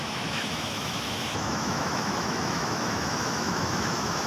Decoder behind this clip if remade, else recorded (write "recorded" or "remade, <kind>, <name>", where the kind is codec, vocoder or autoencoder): remade, autoencoder, DAC-VAE